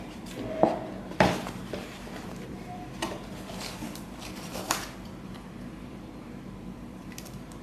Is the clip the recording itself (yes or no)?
no